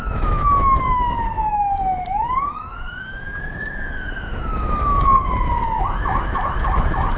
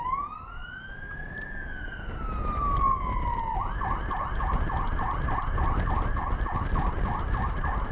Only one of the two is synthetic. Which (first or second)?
first